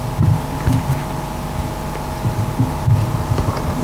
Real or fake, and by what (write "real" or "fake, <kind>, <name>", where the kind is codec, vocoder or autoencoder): real